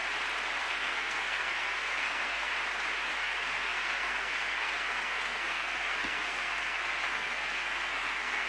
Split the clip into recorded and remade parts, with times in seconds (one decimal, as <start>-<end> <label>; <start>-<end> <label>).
0.0-0.6 recorded; 0.6-2.5 remade; 2.5-3.1 recorded; 3.1-8.5 remade